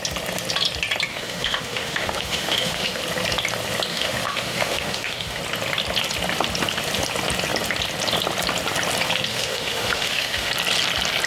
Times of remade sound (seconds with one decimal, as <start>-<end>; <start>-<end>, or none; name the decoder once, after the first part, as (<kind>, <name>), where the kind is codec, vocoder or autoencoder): 1.1-3.0 (autoencoder, DAC-VAE); 3.9-5.4; 9.3-10.5